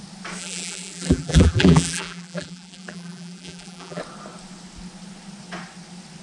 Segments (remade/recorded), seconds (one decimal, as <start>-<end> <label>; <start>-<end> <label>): 0.0-0.4 recorded; 0.4-4.0 remade; 4.0-6.2 recorded